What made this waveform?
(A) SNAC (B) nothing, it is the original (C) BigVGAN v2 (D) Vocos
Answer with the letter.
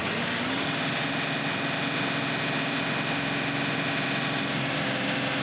B